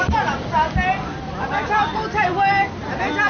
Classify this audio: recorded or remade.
recorded